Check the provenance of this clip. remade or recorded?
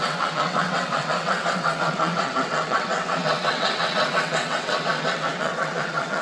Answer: remade